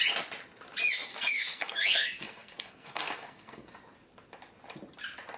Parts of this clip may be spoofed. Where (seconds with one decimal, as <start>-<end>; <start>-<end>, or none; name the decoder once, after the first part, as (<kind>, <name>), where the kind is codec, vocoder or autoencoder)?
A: 1.1-3.7 (codec, SNAC)